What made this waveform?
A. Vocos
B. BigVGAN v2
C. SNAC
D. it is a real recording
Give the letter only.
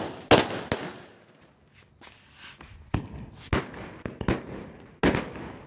D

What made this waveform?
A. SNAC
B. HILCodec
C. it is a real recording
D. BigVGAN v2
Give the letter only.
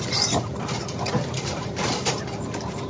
D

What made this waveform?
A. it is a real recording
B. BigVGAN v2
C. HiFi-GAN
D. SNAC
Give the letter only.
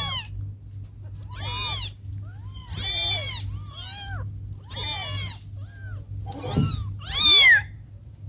A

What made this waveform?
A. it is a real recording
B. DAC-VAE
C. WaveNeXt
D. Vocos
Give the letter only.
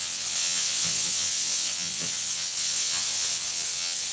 C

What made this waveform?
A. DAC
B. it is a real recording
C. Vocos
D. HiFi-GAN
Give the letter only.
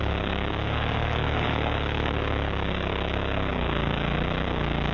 A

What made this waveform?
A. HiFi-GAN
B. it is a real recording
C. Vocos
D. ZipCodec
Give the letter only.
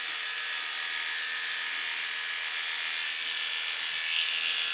B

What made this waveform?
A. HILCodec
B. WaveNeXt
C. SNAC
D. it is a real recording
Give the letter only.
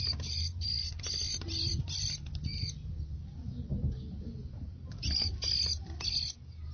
D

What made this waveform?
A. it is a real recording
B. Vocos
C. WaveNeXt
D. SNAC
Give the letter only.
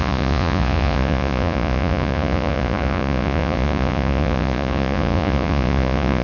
B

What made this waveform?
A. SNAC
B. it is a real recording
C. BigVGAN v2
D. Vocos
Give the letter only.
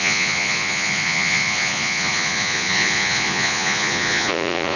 D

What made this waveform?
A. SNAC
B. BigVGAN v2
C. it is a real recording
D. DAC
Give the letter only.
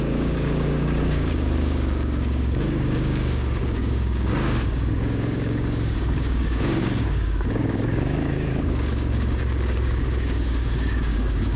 D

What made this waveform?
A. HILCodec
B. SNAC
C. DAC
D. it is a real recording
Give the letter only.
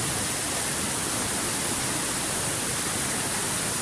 D